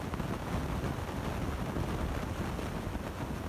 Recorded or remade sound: recorded